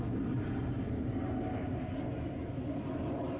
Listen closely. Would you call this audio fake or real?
real